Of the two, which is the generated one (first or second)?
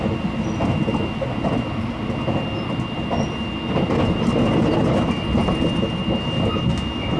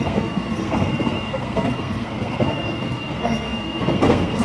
second